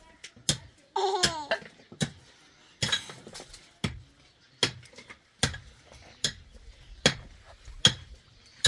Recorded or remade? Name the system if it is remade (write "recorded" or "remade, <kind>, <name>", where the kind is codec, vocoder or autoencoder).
recorded